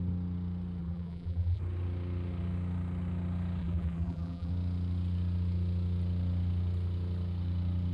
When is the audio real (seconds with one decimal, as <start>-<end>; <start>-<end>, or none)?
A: 0.0-0.8; 1.6-3.6; 4.5-7.9